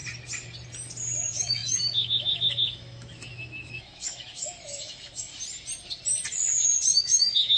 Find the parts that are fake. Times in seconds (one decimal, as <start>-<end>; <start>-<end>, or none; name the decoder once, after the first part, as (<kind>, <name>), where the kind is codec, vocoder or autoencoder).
1.2-5.3 (autoencoder, DAC-VAE); 7.0-7.6